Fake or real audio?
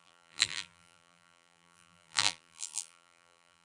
fake